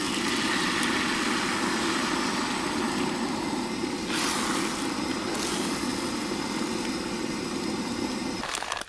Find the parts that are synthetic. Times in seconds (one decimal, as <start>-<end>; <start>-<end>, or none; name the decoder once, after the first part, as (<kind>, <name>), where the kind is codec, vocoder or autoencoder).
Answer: none